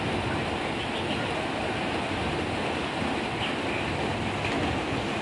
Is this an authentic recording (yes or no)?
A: yes